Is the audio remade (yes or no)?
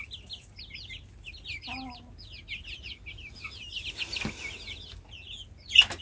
no